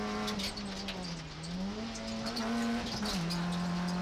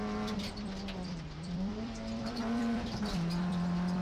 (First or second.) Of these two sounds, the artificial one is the second